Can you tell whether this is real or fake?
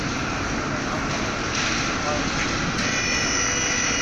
real